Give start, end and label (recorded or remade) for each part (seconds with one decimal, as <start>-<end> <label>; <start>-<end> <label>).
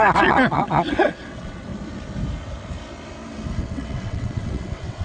0.0-1.7 remade; 1.7-3.6 recorded; 3.6-5.0 remade